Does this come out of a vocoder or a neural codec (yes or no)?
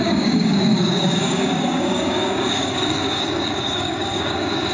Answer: yes